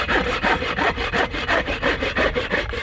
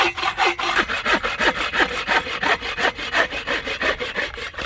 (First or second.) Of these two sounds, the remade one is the first